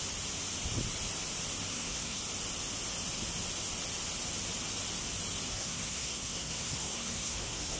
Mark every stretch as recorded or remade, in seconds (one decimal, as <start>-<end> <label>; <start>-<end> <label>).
0.0-1.7 recorded; 1.7-2.2 remade; 2.2-5.5 recorded; 5.5-7.8 remade